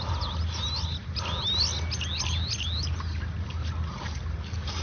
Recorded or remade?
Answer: recorded